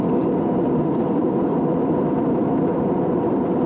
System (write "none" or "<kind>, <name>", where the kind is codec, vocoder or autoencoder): vocoder, BigVGAN v2